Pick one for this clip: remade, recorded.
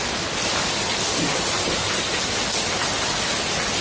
recorded